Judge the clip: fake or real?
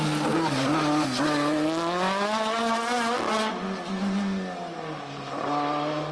real